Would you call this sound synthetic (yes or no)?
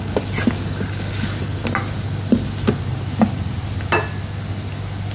no